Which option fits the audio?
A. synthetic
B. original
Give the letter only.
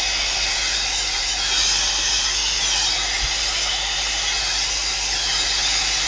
B